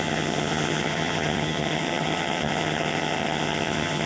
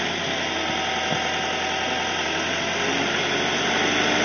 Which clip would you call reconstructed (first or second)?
first